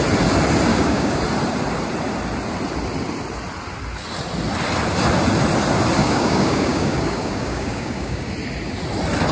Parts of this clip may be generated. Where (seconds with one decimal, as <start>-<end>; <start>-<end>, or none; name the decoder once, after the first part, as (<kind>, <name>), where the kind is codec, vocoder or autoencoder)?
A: 0.7-1.2 (codec, DAC); 6.0-8.3